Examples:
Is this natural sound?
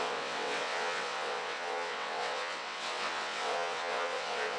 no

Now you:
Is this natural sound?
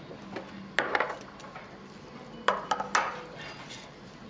yes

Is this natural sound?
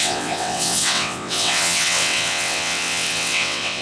no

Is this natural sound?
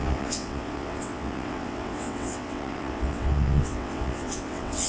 no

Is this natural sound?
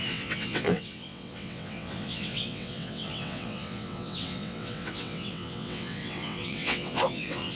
no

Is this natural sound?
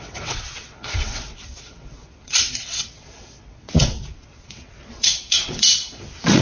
no